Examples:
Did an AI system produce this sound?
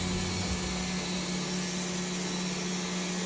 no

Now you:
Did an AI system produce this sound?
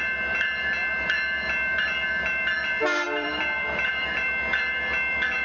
yes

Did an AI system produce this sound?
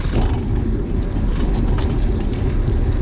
no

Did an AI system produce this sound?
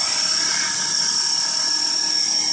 no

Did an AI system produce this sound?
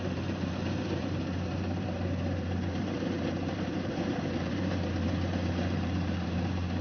yes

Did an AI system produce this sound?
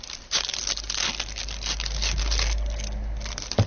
no